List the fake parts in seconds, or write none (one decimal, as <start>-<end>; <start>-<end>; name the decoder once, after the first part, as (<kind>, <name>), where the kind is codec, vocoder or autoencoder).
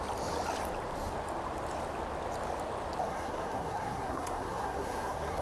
3.0-5.4 (codec, SNAC)